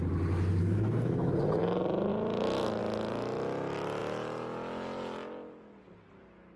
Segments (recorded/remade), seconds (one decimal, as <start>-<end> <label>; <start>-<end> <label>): 0.0-0.6 recorded; 0.6-1.4 remade; 1.4-6.6 recorded